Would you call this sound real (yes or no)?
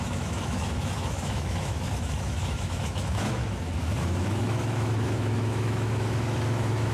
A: no